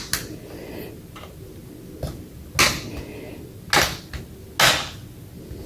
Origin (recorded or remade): recorded